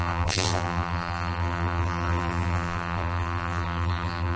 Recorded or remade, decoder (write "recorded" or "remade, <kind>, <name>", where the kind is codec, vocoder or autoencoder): remade, vocoder, BigVGAN v2